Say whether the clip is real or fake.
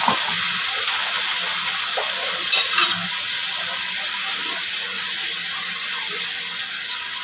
real